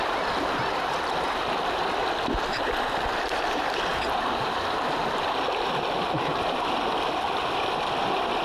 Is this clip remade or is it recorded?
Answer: recorded